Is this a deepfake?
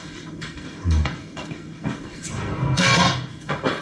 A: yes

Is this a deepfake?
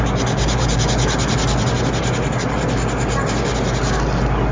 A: no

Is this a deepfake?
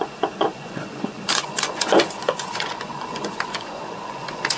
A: yes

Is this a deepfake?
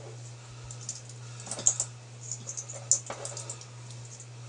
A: no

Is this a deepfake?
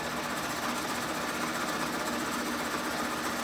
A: no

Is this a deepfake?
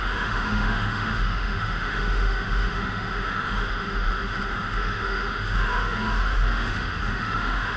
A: yes